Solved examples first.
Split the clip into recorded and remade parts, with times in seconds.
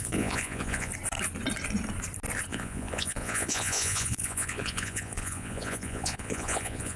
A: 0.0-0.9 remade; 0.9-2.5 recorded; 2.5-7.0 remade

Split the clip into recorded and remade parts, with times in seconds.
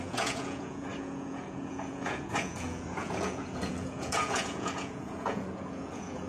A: 0.0-6.3 remade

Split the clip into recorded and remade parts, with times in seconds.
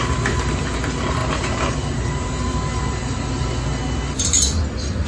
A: 0.0-1.2 recorded; 1.2-3.3 remade; 3.3-5.1 recorded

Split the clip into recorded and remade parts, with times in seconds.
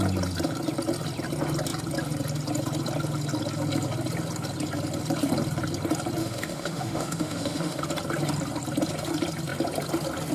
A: 0.0-6.2 recorded; 6.2-7.8 remade; 7.8-10.3 recorded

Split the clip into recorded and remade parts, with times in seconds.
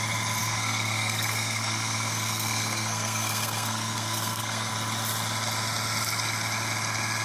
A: 0.0-0.4 recorded; 0.4-4.7 remade; 4.7-7.2 recorded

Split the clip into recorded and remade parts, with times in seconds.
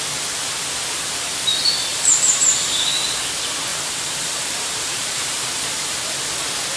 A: 0.0-1.9 recorded; 1.9-3.2 remade; 3.2-3.7 recorded; 3.7-5.5 remade; 5.5-6.8 recorded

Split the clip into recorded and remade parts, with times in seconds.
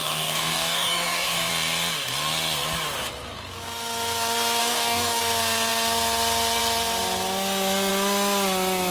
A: 0.0-1.5 remade; 1.5-4.6 recorded; 4.6-5.2 remade; 5.2-8.9 recorded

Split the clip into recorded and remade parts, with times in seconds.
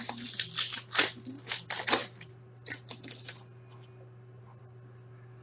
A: 0.0-5.4 recorded